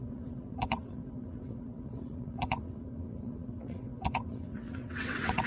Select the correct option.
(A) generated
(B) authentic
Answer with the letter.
A